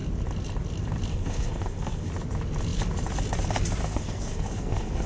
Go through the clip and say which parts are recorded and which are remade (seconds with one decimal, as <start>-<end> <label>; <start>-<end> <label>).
0.0-1.1 recorded; 1.1-2.1 remade; 2.1-3.8 recorded; 3.8-5.1 remade